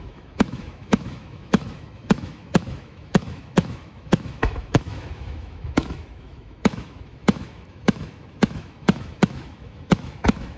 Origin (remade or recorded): remade